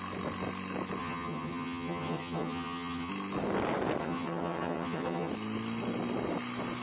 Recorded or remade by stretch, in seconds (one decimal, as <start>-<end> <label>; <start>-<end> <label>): 0.0-1.0 recorded; 1.0-3.1 remade; 3.1-4.0 recorded; 4.0-5.3 remade; 5.3-6.8 recorded